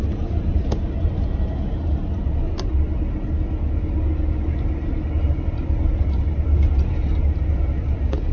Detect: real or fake real